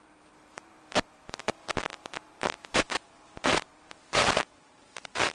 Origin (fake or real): fake